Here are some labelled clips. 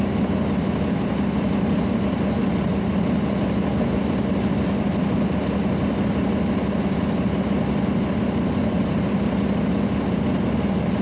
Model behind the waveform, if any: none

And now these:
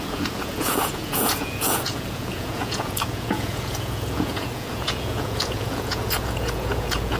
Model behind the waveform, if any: vocoder, Vocos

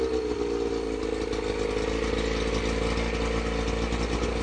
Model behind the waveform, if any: none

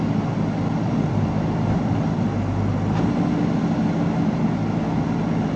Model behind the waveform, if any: none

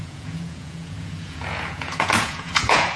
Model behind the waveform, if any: vocoder, Vocos